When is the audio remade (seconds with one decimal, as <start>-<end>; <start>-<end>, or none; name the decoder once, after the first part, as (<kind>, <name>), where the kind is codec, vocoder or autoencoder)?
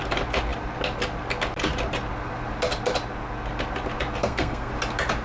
4.2-4.7 (codec, SNAC)